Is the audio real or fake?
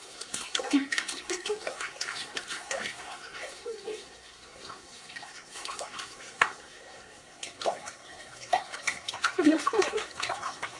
fake